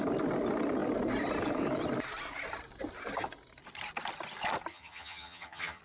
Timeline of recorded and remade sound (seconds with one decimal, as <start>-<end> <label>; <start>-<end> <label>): 0.0-4.7 recorded; 4.7-5.8 remade